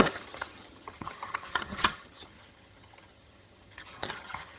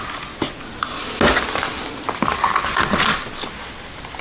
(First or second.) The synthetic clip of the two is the first